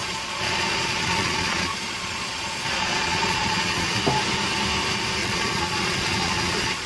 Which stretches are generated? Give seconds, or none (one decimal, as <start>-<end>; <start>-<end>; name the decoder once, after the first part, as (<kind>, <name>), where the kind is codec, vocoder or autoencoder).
0.0-4.0 (vocoder, Vocos); 5.2-6.9